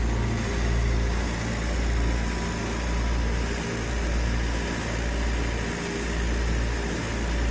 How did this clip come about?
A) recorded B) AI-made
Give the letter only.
A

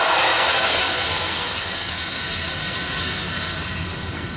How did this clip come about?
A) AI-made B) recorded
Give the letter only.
A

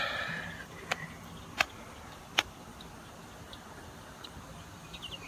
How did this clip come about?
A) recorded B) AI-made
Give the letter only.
B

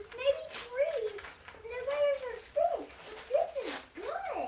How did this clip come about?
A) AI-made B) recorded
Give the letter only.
B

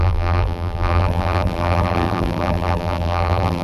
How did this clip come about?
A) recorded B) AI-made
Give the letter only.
B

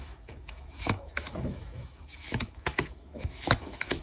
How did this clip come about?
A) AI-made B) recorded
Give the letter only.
A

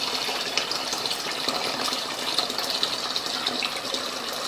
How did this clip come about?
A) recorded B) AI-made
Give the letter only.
A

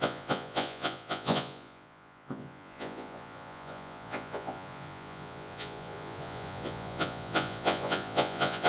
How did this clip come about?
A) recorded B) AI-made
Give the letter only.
B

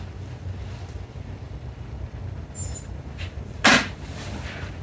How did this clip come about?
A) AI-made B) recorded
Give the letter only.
B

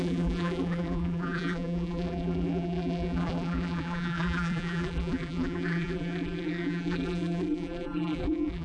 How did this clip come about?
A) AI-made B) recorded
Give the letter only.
A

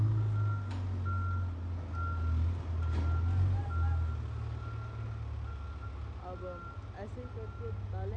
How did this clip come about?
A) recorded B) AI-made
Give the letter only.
A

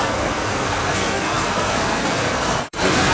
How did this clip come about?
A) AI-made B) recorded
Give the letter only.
A